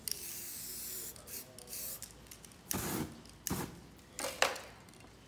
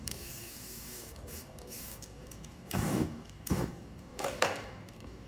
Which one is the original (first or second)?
first